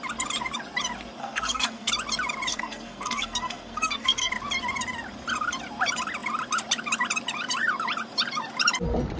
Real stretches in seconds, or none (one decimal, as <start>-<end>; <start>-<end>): 0.0-1.2; 1.9-2.5; 4.3-9.2